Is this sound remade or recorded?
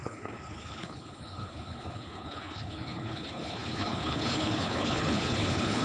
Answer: remade